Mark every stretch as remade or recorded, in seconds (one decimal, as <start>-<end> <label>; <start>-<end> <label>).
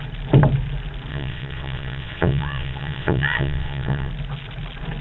0.0-1.1 recorded; 1.1-4.1 remade; 4.1-5.0 recorded